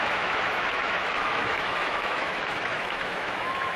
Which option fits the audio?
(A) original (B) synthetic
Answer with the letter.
B